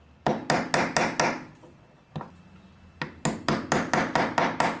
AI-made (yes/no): no